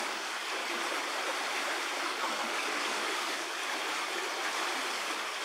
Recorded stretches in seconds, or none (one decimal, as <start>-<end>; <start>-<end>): 0.6-2.0; 3.6-4.9